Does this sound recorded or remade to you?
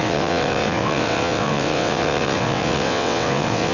remade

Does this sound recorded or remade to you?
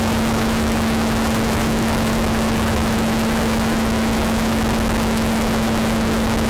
remade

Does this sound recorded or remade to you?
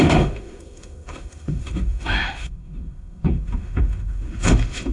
remade